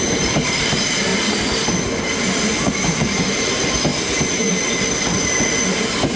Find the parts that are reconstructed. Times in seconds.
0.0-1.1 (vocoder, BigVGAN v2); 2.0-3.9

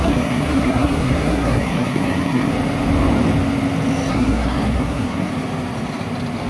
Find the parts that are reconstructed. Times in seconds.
0.0-2.5 (codec, SNAC); 4.1-5.3